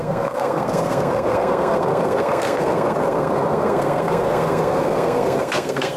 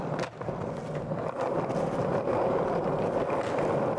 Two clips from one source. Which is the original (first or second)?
second